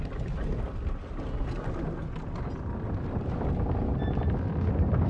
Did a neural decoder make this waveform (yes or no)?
no